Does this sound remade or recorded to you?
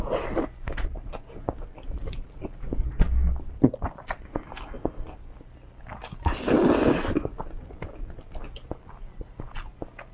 recorded